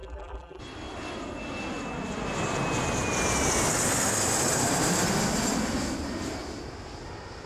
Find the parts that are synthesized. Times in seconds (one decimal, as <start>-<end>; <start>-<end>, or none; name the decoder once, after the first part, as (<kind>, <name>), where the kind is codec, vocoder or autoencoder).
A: 0.0-0.6 (vocoder, BigVGAN v2)